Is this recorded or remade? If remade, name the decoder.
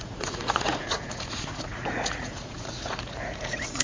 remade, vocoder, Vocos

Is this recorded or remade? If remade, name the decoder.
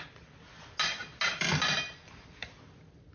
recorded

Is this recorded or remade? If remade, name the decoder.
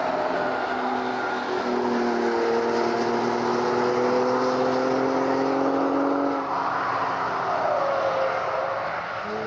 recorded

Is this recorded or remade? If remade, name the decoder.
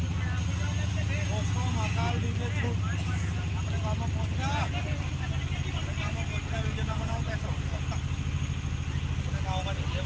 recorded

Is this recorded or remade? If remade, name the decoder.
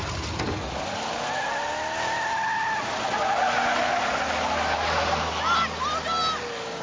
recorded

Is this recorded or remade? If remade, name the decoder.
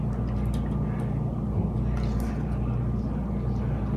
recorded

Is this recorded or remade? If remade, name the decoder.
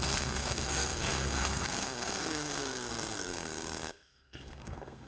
remade, codec, SNAC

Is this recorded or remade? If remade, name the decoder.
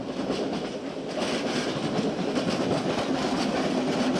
recorded